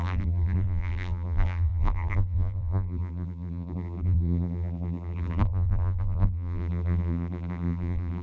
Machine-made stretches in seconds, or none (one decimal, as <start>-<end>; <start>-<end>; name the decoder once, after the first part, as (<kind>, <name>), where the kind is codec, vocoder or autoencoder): 0.0-8.2 (vocoder, BigVGAN v2)